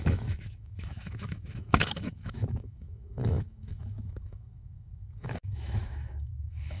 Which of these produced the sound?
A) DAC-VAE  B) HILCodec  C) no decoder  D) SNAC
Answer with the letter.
A